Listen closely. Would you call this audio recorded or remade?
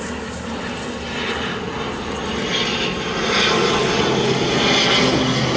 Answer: recorded